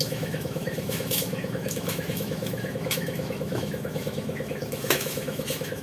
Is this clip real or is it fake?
fake